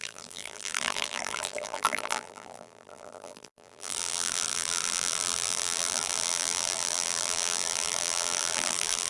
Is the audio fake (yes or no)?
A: yes